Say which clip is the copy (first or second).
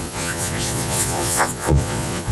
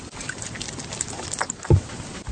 first